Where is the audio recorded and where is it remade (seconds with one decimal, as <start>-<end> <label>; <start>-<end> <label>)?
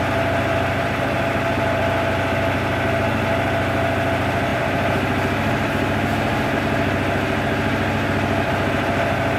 0.0-9.4 recorded